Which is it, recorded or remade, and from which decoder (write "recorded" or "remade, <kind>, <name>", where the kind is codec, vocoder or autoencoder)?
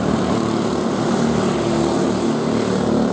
recorded